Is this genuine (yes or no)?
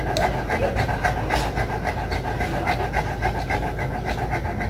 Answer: yes